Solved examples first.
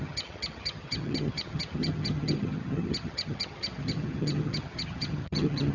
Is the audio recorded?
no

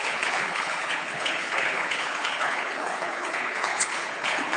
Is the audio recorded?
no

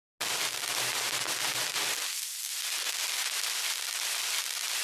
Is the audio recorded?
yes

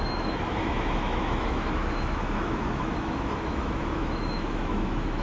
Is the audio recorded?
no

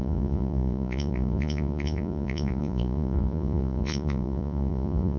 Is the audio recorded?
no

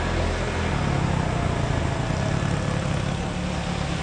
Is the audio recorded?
yes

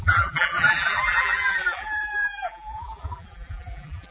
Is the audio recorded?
no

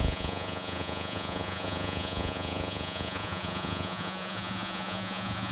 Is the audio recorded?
no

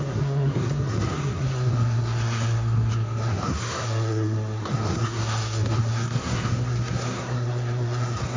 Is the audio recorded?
no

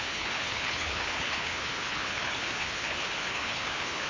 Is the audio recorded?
no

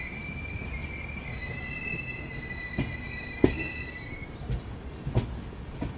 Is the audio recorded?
yes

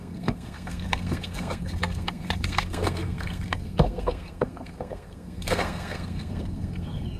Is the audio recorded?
no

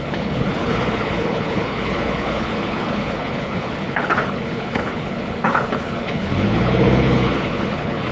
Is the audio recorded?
no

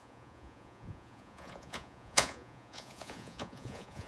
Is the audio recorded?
no